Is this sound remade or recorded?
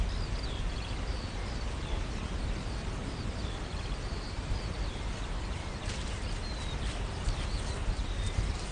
recorded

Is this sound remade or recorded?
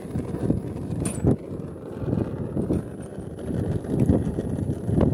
recorded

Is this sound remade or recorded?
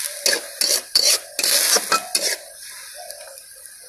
recorded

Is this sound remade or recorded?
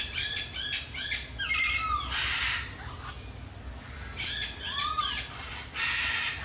recorded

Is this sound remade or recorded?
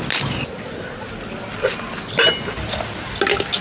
recorded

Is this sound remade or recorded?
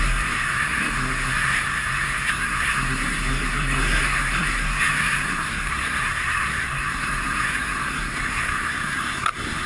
remade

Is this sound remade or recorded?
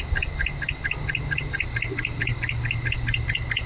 recorded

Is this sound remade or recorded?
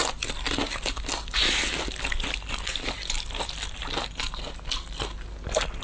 recorded